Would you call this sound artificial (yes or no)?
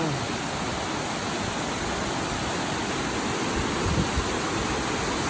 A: no